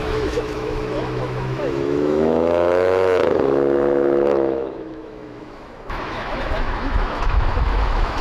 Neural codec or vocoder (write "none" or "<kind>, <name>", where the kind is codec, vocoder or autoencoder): autoencoder, DAC-VAE